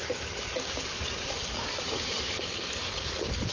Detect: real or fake fake